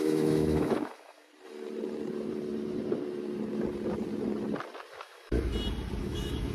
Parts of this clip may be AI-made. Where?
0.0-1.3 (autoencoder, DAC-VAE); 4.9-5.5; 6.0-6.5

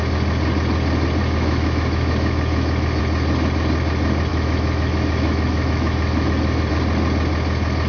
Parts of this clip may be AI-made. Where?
1.2-3.0 (autoencoder, DAC-VAE); 4.3-6.7

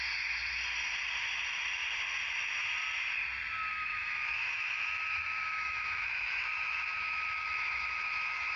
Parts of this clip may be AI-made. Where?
3.7-8.6 (autoencoder, DAC-VAE)

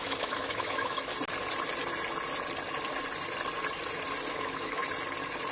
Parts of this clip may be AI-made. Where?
0.0-1.1 (autoencoder, DAC-VAE); 4.3-4.8

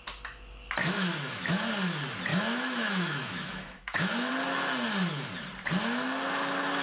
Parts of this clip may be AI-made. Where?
0.8-1.7 (autoencoder, DAC-VAE); 2.3-4.3

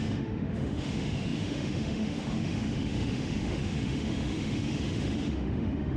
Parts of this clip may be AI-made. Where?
0.0-6.0 (autoencoder, DAC-VAE)

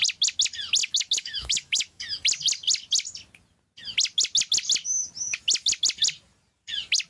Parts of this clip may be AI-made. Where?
0.8-2.0 (autoencoder, DAC-VAE)

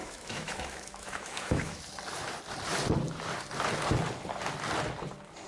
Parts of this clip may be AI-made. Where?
0.0-1.8 (autoencoder, DAC-VAE)